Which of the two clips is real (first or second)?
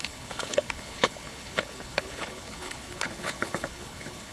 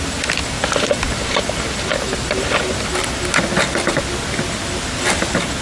second